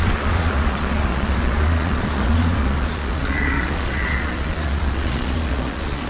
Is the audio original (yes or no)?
no